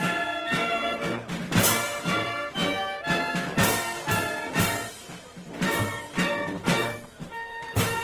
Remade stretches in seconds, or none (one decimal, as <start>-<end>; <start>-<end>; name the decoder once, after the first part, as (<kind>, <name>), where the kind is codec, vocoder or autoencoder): 0.0-2.6 (vocoder, BigVGAN v2); 4.2-8.0